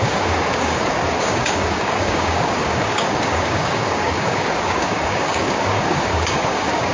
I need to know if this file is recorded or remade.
remade